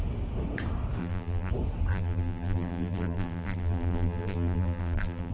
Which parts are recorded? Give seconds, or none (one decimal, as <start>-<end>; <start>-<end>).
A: 0.0-1.0; 1.5-1.9